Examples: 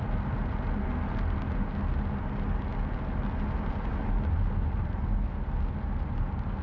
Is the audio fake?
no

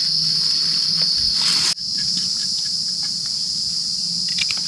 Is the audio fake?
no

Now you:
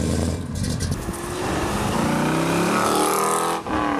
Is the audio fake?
no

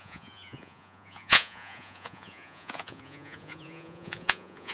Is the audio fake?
yes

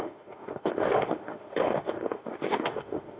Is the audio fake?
yes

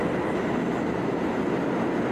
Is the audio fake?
no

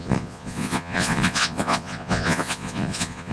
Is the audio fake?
yes